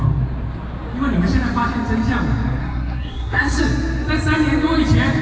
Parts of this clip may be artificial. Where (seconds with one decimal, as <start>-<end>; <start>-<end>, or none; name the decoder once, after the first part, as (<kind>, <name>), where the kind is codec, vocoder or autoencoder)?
2.6-3.6 (codec, SNAC)